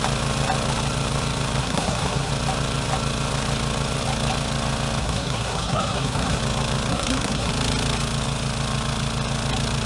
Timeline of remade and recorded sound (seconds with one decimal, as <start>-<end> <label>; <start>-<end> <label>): 0.0-1.6 recorded; 1.6-2.3 remade; 2.3-5.0 recorded; 5.0-6.4 remade; 6.4-6.9 recorded; 6.9-7.5 remade; 7.5-9.9 recorded